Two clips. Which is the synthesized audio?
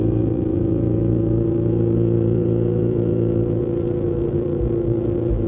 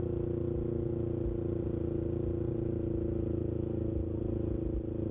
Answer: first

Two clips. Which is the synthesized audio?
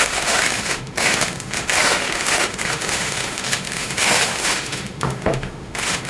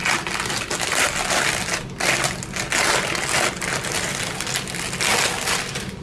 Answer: first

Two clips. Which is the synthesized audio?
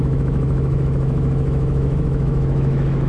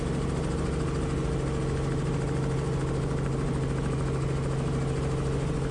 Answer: first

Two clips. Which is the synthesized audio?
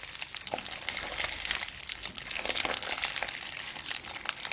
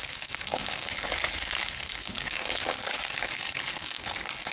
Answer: second